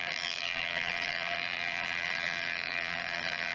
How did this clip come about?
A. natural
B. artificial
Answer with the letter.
B